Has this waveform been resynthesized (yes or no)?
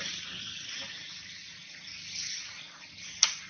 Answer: no